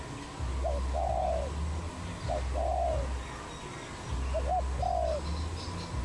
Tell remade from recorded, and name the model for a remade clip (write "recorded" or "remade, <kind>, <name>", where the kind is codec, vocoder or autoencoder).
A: recorded